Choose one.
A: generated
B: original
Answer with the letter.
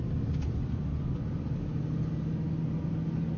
B